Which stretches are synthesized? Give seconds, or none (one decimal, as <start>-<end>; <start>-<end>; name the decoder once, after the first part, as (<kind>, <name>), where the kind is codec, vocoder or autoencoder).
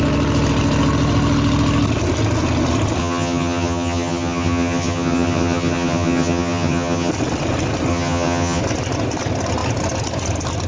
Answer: 3.0-7.1 (vocoder, HiFi-GAN); 7.9-8.6